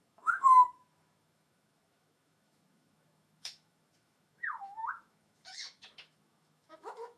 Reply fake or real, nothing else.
fake